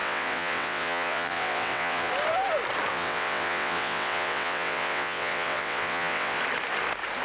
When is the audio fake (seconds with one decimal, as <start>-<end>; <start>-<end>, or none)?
0.0-2.1; 2.9-6.4